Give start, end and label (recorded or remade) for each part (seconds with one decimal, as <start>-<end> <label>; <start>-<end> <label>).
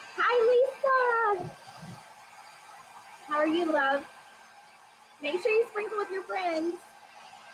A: 0.0-3.7 recorded; 3.7-4.4 remade; 4.4-5.2 recorded; 5.2-5.9 remade; 5.9-7.5 recorded